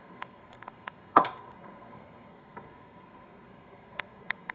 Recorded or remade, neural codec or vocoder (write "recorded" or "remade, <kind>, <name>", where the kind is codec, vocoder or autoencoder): remade, codec, SNAC